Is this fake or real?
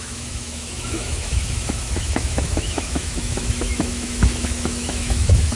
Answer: fake